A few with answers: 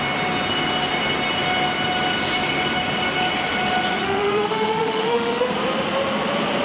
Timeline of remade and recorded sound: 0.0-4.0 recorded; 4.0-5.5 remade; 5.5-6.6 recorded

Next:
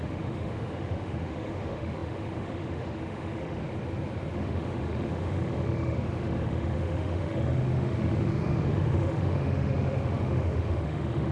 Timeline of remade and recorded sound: 0.0-3.6 remade; 3.6-4.3 recorded; 4.3-11.3 remade

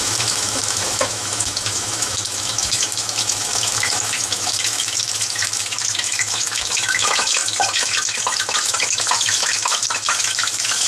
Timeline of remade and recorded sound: 0.0-10.9 remade